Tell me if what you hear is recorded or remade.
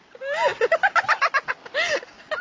recorded